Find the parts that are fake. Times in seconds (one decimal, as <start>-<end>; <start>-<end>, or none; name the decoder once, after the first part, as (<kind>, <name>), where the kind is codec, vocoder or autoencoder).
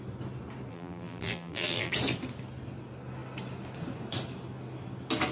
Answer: 0.7-1.9 (vocoder, BigVGAN v2)